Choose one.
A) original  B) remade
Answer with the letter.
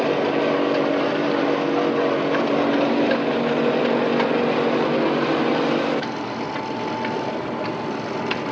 A